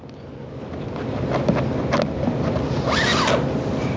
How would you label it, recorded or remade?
recorded